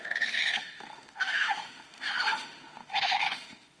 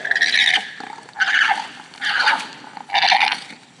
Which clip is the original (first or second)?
second